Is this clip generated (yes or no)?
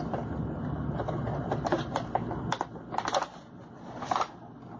no